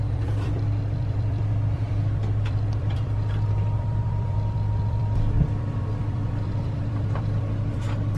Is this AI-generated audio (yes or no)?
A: yes